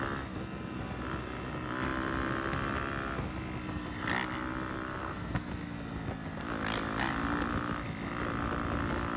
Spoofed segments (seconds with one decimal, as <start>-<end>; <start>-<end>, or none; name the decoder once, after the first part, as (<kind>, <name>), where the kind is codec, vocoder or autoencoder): 5.0-5.5 (codec, SNAC)